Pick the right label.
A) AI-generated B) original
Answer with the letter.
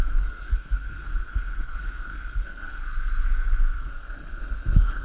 A